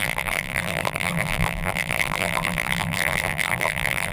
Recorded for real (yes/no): no